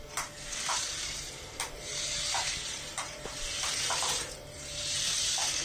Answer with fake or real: fake